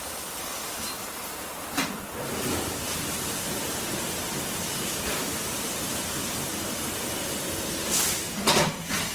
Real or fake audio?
real